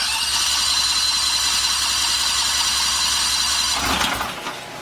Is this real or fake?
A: real